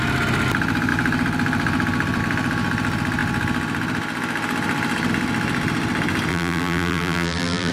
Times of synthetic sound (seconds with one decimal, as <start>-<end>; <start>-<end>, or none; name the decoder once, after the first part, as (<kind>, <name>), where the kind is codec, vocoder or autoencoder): 6.3-7.7 (vocoder, BigVGAN v2)